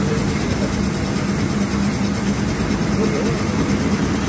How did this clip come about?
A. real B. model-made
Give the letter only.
A